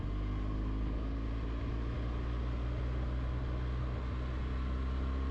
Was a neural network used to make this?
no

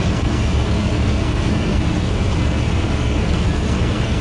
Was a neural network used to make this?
yes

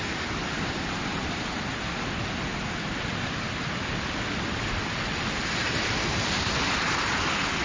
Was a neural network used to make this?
no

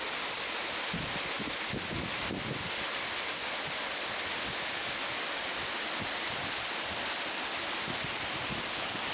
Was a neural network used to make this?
no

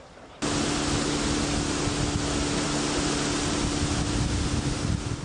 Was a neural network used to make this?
no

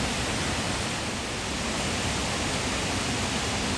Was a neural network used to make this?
no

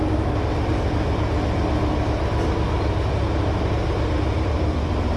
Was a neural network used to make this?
no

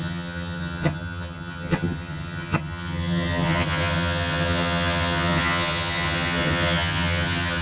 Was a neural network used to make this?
yes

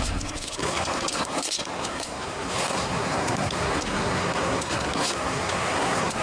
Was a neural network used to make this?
yes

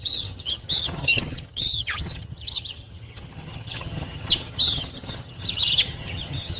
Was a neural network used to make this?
yes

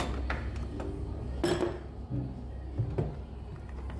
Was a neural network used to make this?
no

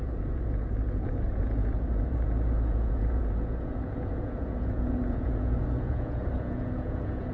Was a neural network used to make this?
yes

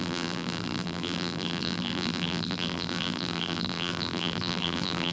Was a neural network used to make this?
yes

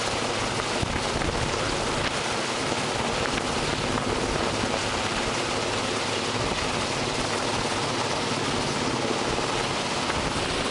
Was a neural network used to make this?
no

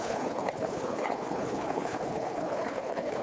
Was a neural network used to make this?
yes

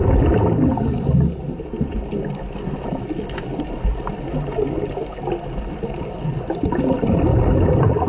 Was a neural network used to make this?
no